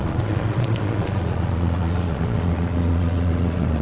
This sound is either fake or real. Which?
fake